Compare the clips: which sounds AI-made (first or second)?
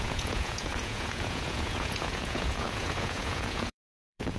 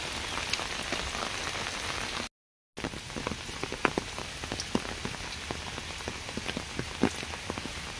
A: first